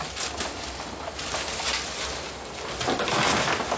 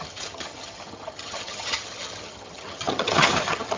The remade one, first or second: second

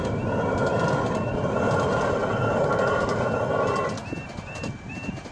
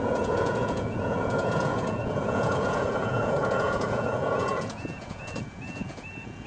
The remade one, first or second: second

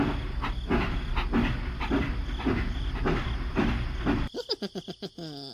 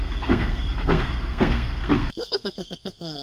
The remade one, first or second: second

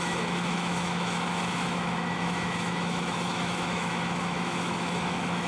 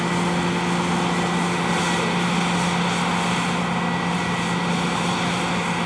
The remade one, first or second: first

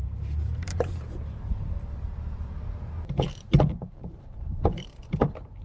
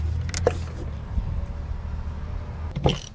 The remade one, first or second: first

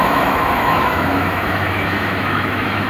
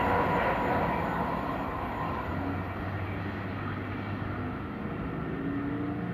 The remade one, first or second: first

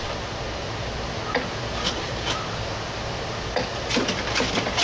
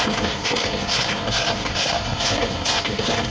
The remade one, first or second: second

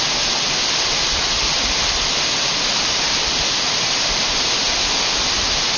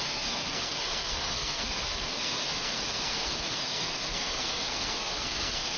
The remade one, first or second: second